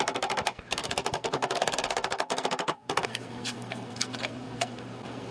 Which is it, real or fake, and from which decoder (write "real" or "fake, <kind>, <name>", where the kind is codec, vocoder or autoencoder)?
fake, codec, SNAC